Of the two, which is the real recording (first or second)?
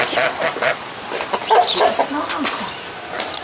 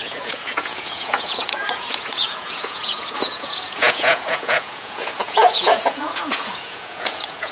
first